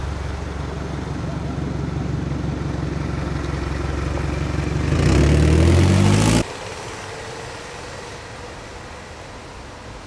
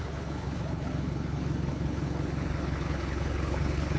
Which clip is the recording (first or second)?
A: first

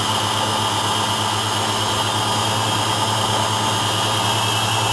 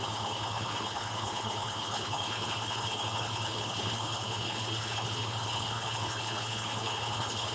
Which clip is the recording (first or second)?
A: first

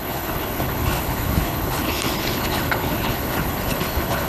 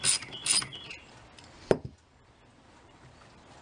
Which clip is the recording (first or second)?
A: second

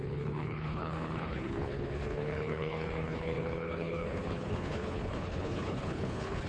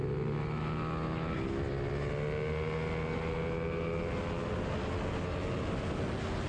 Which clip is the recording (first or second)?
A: second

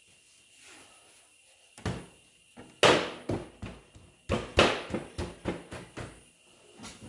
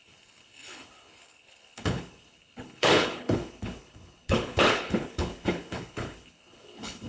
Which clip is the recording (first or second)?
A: first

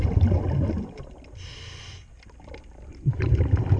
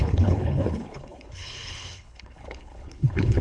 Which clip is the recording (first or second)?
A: first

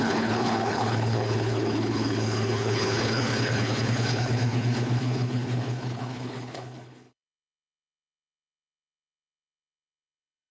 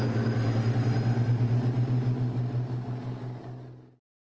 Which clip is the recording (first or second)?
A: second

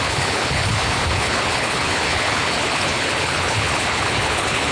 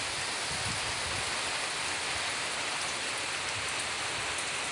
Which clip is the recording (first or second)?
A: second